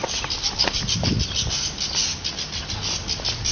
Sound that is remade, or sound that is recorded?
recorded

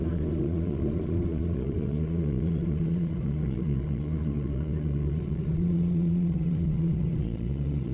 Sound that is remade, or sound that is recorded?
remade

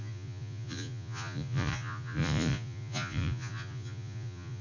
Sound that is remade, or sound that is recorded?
remade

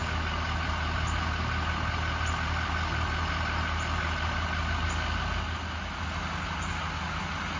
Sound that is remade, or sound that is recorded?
recorded